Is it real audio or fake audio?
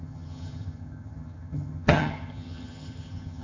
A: fake